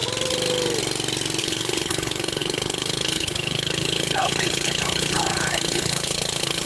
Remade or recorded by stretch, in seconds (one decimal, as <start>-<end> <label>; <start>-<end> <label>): 0.0-1.4 recorded; 1.4-6.7 remade